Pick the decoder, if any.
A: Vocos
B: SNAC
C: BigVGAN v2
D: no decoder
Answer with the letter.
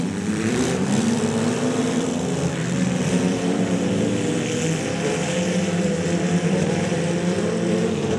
C